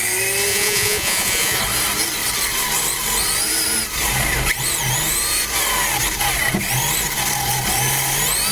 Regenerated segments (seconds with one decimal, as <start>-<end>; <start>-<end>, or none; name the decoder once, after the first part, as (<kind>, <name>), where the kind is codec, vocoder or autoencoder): 0.5-1.6 (vocoder, Vocos)